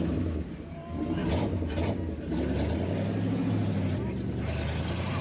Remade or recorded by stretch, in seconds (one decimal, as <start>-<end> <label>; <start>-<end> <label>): 0.0-5.2 recorded